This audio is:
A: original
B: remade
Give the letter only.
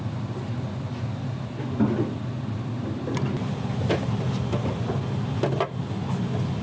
A